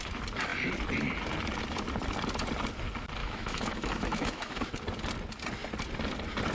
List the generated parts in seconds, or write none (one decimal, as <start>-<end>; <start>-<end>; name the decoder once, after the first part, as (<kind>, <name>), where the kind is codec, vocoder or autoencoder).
3.2-4.7 (autoencoder, DAC-VAE)